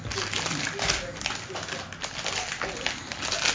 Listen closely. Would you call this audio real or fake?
real